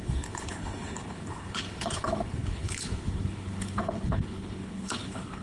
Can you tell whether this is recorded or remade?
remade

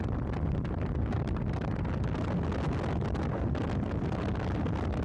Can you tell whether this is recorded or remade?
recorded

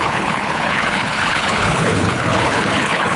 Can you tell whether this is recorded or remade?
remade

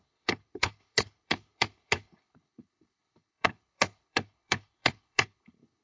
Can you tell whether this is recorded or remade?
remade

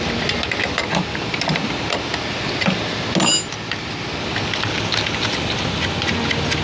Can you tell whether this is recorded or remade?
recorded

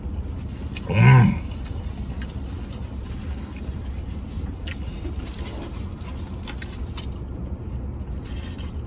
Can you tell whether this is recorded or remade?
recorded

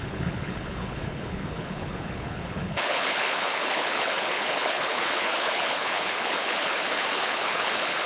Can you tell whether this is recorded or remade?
remade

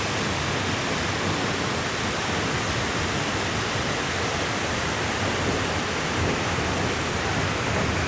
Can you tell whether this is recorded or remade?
recorded